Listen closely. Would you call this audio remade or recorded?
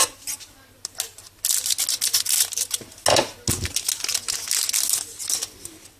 recorded